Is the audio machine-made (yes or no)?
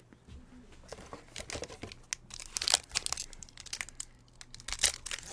no